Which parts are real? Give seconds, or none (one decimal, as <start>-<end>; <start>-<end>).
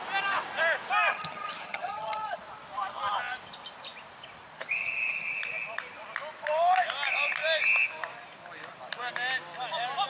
0.0-1.1; 2.4-10.1